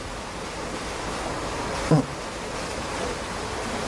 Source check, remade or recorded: recorded